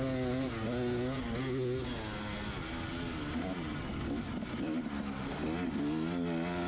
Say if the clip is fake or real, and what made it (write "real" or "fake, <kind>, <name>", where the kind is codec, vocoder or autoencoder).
real